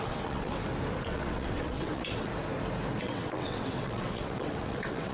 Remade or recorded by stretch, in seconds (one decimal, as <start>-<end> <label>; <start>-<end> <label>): 0.0-0.5 remade; 0.5-1.0 recorded; 1.0-2.3 remade; 2.3-3.0 recorded; 3.0-5.1 remade